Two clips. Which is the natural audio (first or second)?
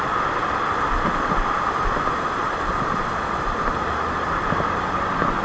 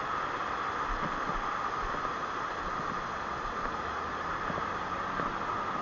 second